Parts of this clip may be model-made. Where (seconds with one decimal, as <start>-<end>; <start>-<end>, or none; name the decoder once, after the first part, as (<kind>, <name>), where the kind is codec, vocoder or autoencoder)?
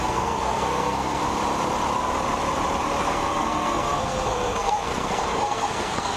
0.0-1.2 (codec, SNAC); 3.0-6.2